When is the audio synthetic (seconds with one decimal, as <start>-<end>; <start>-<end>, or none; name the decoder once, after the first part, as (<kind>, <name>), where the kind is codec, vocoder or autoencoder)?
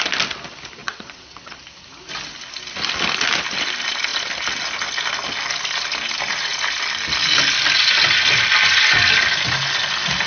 0.8-1.6 (vocoder, WaveNeXt)